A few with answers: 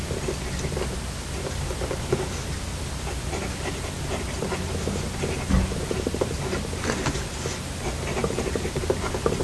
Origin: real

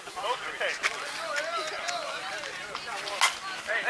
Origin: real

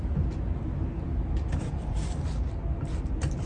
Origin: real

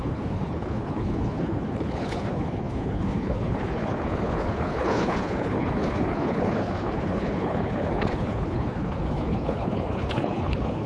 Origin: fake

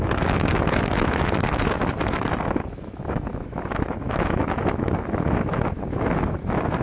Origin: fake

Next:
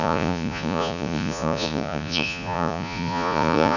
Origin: fake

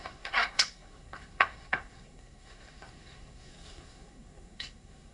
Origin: fake